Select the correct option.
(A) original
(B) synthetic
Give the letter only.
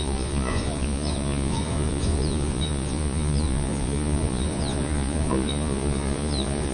B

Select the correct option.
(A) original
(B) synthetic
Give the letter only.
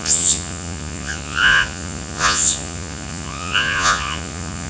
B